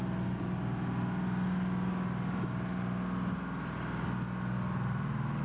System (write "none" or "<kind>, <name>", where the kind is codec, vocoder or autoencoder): none